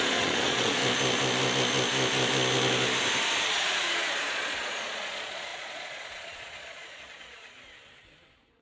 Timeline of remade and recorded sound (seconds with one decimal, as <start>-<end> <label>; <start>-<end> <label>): 0.0-0.8 remade; 0.8-3.5 recorded; 3.5-8.6 remade